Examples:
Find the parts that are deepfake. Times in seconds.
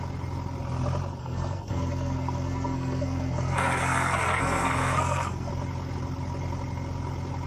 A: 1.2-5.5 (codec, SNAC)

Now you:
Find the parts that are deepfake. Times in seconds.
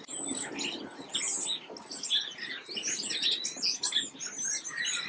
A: none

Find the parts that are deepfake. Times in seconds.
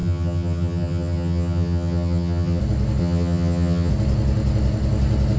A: 0.0-2.6 (vocoder, HiFi-GAN); 3.0-3.9